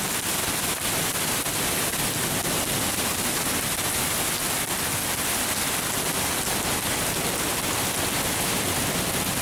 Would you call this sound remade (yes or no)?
no